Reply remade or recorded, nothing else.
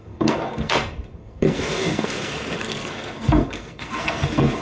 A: remade